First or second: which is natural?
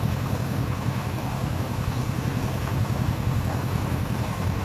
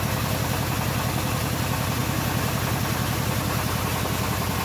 second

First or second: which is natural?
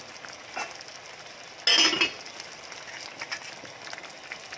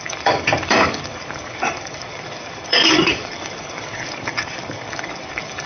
first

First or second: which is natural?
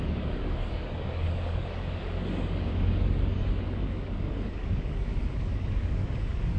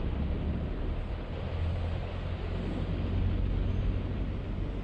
second